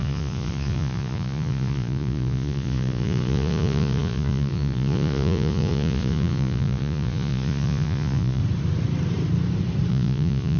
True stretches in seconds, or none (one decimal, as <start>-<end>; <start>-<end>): 8.4-9.9

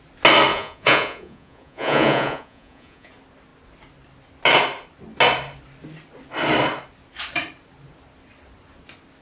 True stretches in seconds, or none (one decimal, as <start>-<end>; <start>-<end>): 0.0-0.5; 3.1-9.2

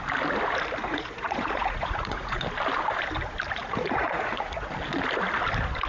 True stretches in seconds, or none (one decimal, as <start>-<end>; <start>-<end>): 0.0-0.8; 2.4-3.6; 4.7-5.9

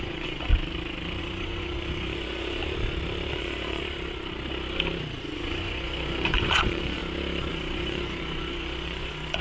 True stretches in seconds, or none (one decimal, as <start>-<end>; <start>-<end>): 0.5-1.2; 2.6-3.3; 3.8-5.2; 7.0-7.5

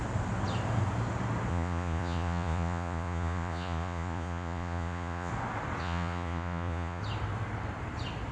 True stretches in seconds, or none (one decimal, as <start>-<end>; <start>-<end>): 0.0-1.5; 5.3-5.8; 7.0-8.3

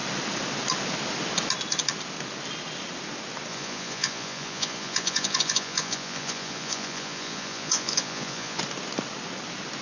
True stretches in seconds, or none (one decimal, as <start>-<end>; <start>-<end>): 0.0-3.5; 8.6-9.8